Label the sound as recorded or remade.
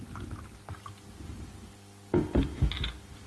recorded